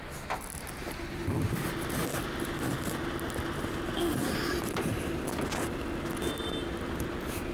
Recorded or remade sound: recorded